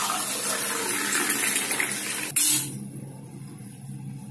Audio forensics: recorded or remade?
recorded